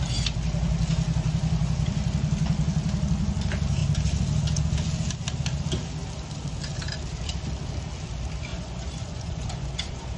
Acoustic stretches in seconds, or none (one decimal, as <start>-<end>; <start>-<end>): 0.0-8.5